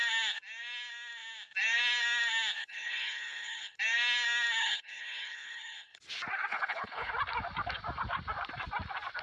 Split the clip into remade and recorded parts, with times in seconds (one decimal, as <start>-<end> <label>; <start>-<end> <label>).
0.0-2.6 recorded; 2.6-3.8 remade; 3.8-4.6 recorded; 4.6-6.0 remade; 6.0-6.5 recorded; 6.5-7.1 remade; 7.1-9.2 recorded